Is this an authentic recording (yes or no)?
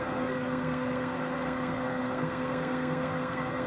no